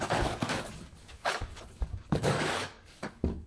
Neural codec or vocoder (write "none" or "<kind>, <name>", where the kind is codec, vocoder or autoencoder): codec, DAC